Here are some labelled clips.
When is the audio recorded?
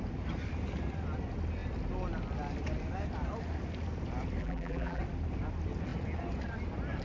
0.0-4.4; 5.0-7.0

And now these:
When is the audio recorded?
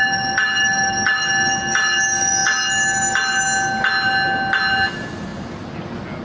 0.0-6.2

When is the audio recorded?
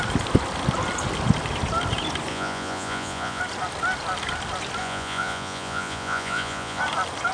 0.0-2.3; 3.4-4.8; 6.8-7.3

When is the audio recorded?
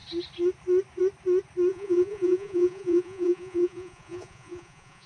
0.0-1.7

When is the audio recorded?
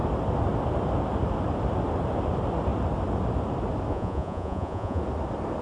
0.0-3.9; 5.0-5.6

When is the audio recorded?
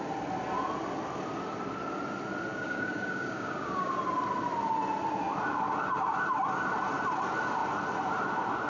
0.0-2.5; 3.9-8.7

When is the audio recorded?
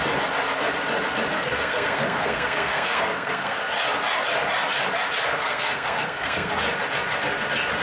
0.0-1.3; 3.6-5.4; 6.5-7.8